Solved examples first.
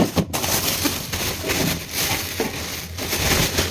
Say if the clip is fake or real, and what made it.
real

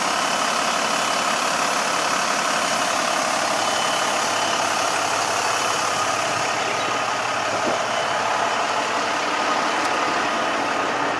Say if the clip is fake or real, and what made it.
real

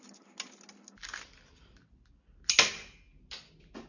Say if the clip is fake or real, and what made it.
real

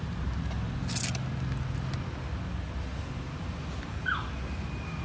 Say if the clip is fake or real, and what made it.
real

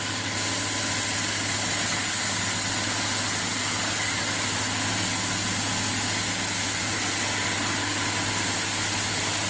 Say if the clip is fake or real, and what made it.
real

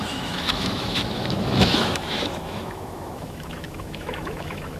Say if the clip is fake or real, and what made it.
fake, autoencoder, DAC-VAE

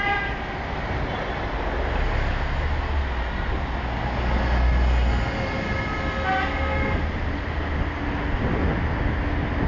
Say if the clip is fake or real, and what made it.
real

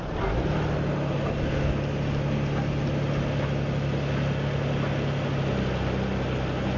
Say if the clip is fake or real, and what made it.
real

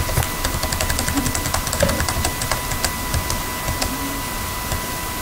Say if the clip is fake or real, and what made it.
real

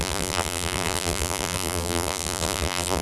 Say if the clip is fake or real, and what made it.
fake, vocoder, BigVGAN v2